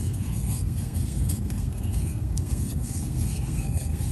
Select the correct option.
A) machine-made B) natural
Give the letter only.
A